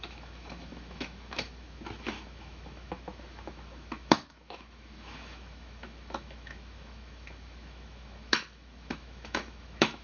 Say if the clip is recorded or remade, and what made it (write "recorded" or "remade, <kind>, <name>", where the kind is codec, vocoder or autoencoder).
remade, autoencoder, DAC-VAE